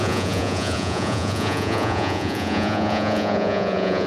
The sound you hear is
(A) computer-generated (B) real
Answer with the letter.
A